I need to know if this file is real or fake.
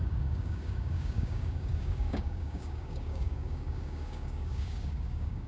fake